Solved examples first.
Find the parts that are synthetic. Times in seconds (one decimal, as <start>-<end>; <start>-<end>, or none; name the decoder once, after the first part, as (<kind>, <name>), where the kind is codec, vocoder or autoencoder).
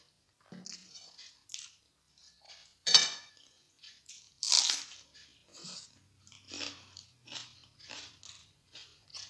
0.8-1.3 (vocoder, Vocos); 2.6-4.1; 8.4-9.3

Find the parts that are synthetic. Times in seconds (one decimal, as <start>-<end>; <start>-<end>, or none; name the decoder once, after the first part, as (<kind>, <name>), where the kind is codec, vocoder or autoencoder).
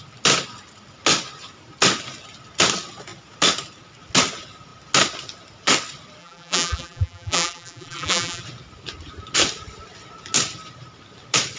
6.2-8.4 (vocoder, BigVGAN v2)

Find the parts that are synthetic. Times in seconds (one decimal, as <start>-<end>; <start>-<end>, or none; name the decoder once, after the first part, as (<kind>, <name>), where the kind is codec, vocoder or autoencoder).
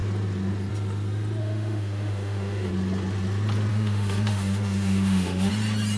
1.4-2.7 (autoencoder, DAC-VAE); 3.7-5.5